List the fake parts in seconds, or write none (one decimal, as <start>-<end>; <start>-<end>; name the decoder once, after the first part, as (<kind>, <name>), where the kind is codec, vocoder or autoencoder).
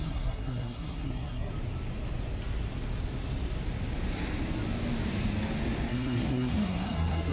0.0-1.5 (codec, SNAC); 5.9-7.3